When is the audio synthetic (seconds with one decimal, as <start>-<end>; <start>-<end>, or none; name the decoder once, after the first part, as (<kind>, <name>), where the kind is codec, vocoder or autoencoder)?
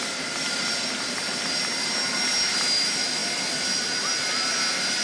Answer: none